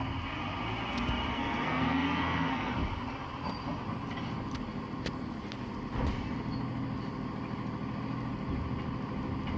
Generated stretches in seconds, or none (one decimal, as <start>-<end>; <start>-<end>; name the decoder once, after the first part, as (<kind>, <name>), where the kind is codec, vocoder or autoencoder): 1.3-2.7 (codec, SNAC)